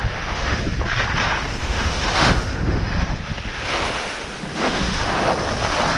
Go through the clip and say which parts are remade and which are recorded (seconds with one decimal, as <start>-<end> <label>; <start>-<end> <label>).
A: 0.0-0.6 remade; 0.6-1.6 recorded; 1.6-5.2 remade; 5.2-6.0 recorded